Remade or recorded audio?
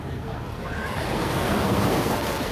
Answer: remade